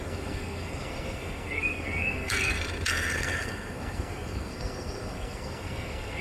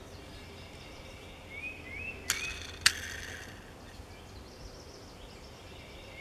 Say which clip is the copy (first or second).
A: first